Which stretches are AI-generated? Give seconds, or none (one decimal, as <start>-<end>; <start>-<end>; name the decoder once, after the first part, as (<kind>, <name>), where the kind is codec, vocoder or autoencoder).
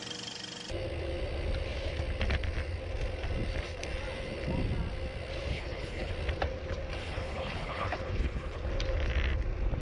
5.5-6.1 (codec, HILCodec); 7.0-8.7